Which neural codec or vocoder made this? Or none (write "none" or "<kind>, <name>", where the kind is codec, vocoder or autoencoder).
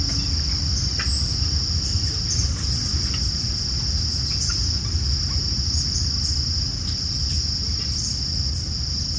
none